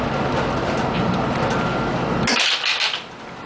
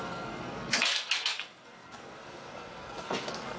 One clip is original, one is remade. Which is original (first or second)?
first